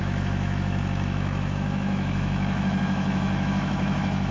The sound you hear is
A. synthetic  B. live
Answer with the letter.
A